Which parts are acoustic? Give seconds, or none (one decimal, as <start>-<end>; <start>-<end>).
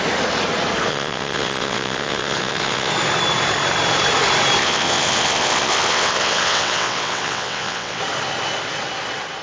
0.0-0.9; 2.9-4.6; 8.0-9.4